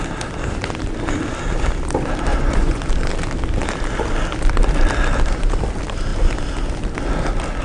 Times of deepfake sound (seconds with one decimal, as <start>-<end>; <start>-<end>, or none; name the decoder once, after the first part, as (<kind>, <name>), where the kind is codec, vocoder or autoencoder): 2.3-2.8 (vocoder, Vocos)

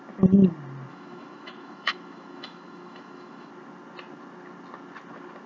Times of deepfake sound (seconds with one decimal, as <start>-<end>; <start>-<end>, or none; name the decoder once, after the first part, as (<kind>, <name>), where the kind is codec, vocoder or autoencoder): 0.9-3.5 (autoencoder, DAC-VAE)

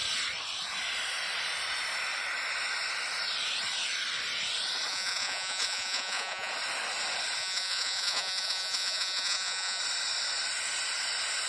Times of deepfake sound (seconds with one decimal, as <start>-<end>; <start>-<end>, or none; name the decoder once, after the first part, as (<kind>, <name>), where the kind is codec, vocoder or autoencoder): 4.9-6.5 (vocoder, Vocos); 7.4-9.8

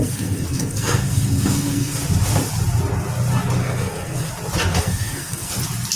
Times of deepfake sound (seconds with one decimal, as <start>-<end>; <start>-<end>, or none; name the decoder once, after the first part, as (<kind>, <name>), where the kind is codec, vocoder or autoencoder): 0.0-2.0 (codec, SNAC); 3.6-4.3; 4.7-5.5

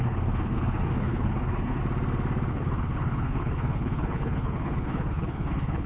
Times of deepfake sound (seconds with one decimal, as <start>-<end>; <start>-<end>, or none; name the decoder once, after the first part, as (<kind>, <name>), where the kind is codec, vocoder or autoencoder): 0.0-1.8 (codec, HILCodec); 2.5-5.9

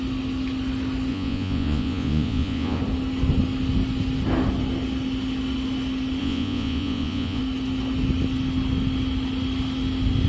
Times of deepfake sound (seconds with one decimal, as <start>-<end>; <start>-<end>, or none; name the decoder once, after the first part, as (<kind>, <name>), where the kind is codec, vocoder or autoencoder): 1.1-2.8 (vocoder, Vocos); 6.2-7.4

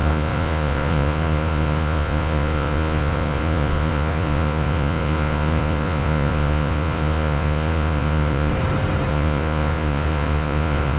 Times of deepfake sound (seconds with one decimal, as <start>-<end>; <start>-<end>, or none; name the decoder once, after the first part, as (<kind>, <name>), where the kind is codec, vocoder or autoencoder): 0.0-8.5 (vocoder, Vocos); 9.1-11.0